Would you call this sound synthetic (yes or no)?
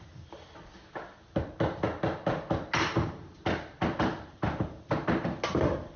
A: no